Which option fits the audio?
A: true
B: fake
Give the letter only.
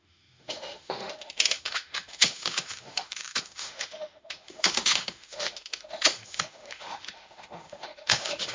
B